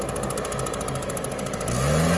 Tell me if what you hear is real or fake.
real